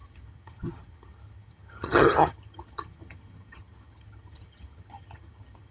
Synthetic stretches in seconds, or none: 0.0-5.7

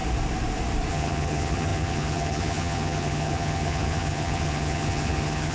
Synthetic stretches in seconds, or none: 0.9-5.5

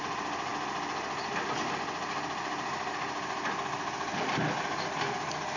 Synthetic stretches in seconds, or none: none

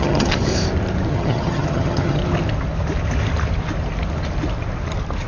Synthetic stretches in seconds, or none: 0.0-0.5; 1.1-2.2

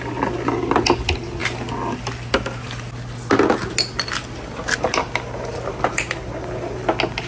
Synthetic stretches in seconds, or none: none